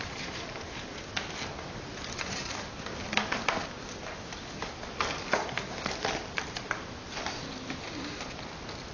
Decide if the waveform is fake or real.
real